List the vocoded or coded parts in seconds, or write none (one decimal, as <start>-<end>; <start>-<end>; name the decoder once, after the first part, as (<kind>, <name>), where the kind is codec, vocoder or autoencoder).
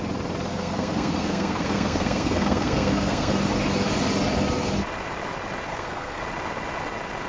0.5-3.3 (codec, SNAC); 5.7-6.2